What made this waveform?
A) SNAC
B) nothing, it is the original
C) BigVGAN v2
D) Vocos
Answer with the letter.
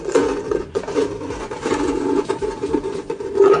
D